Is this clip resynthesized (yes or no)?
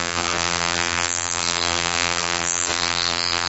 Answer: yes